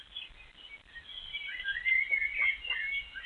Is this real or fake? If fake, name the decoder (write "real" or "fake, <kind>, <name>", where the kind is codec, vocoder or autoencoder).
real